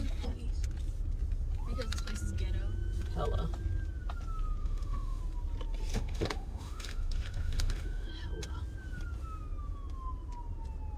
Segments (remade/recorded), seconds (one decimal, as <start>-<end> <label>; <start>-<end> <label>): 0.0-4.6 recorded; 4.6-5.2 remade; 5.2-5.9 recorded; 5.9-8.1 remade; 8.1-11.0 recorded